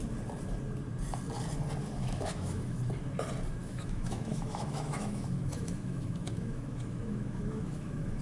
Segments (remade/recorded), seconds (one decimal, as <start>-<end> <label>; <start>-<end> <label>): 0.0-2.0 recorded; 2.0-2.8 remade; 2.8-3.6 recorded; 3.6-8.2 remade

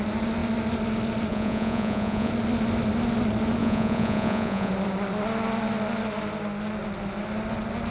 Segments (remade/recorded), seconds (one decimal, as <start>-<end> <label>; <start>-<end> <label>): 0.0-1.3 recorded; 1.3-2.3 remade; 2.3-3.6 recorded; 3.6-4.7 remade; 4.7-7.9 recorded

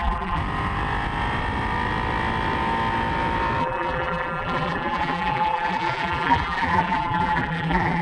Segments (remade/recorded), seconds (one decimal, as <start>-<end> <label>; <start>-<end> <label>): 0.0-0.4 remade; 0.4-3.6 recorded; 3.6-8.0 remade

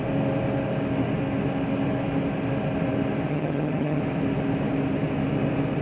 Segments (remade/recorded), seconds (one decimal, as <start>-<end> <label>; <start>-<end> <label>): 0.0-3.3 recorded; 3.3-4.0 remade; 4.0-5.8 recorded